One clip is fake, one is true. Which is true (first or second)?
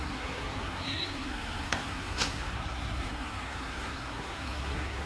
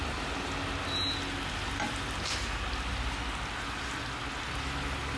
second